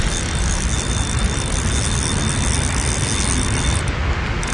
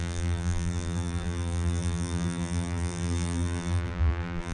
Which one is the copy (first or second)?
second